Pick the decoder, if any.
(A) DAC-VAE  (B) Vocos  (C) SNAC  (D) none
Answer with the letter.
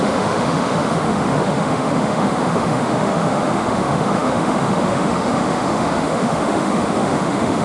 A